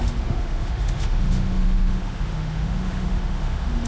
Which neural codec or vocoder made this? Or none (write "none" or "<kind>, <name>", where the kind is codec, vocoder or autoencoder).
autoencoder, DAC-VAE